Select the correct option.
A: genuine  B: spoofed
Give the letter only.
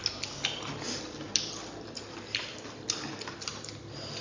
A